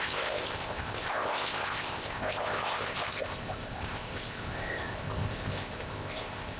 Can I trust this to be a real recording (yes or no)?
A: no